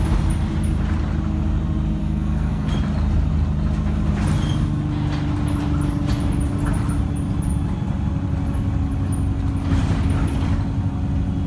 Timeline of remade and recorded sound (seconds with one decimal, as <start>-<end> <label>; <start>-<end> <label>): 0.0-2.0 recorded; 2.0-2.7 remade; 2.7-11.5 recorded